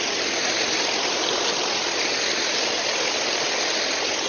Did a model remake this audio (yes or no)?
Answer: no